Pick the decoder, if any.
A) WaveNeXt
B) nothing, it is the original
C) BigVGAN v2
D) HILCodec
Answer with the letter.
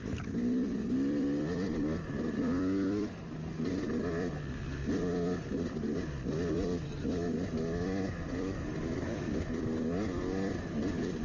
C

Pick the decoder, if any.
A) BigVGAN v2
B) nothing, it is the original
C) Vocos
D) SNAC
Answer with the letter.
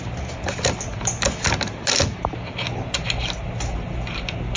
B